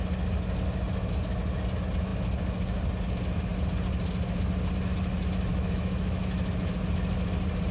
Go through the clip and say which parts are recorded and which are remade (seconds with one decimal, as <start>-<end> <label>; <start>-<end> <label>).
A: 0.0-5.5 recorded; 5.5-6.3 remade; 6.3-7.7 recorded